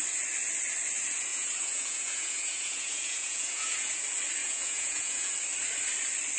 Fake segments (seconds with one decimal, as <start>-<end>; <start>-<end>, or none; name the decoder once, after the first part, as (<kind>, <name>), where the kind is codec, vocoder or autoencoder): 1.3-4.0 (vocoder, Vocos); 4.4-5.3